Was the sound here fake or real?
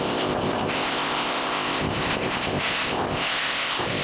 fake